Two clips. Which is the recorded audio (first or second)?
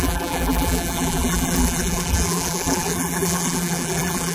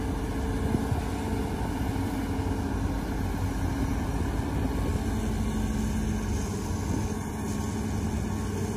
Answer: second